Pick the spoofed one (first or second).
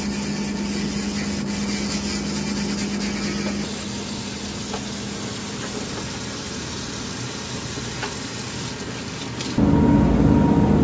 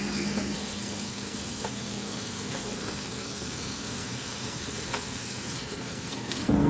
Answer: second